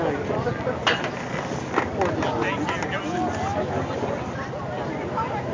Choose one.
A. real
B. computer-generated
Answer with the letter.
A